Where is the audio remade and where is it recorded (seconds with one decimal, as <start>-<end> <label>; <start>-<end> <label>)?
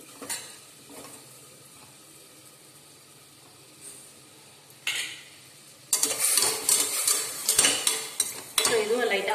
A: 0.0-1.8 remade; 1.8-6.7 recorded; 6.7-7.4 remade; 7.4-9.3 recorded